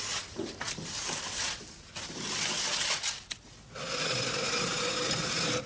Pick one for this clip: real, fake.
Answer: real